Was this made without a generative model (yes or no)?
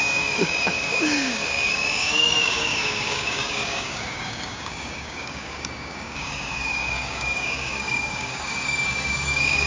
no